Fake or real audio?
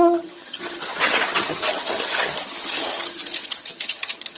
fake